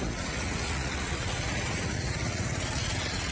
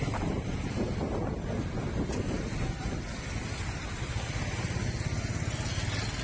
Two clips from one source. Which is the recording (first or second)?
second